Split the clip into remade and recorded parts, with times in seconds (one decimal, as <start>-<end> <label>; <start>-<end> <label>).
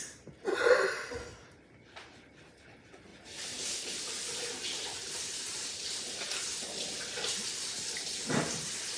0.0-9.0 recorded